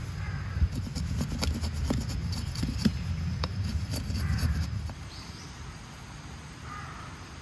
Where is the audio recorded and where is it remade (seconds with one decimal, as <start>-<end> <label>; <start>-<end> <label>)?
0.0-2.2 recorded; 2.2-5.5 remade; 5.5-7.4 recorded